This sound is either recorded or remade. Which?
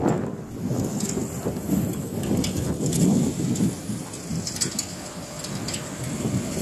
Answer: recorded